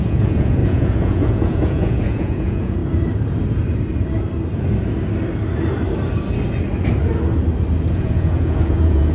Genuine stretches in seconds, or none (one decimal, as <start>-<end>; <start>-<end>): 2.8-7.9